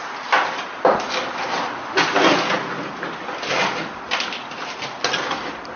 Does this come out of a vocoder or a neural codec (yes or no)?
no